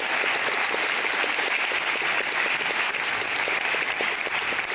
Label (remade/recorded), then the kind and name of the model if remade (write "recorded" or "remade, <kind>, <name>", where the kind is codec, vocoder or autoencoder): recorded